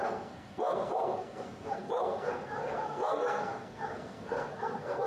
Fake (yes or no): yes